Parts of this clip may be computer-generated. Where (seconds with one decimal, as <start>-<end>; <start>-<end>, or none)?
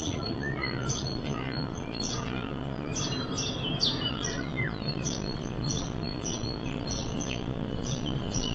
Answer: 0.0-2.9; 4.1-8.5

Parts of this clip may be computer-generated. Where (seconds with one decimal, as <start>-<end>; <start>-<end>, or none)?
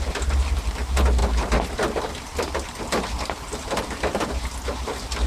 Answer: none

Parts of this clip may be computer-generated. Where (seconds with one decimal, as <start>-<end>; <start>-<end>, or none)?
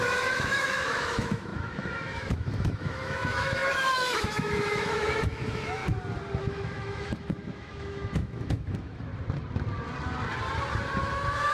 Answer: 0.0-5.8; 6.4-9.1; 11.0-11.5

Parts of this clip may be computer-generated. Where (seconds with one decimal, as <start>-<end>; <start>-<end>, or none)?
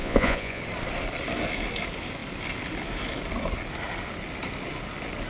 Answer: 0.0-0.6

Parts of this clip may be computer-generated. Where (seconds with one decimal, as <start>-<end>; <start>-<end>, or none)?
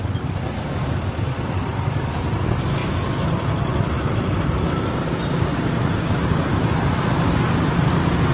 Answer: none